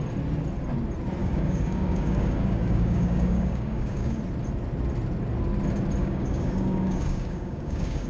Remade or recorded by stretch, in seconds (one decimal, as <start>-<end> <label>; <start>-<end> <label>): 0.0-1.2 recorded; 1.2-4.2 remade; 4.2-6.0 recorded; 6.0-8.1 remade